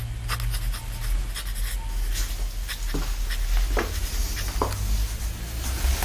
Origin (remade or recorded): recorded